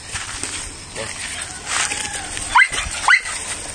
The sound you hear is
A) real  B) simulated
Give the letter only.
A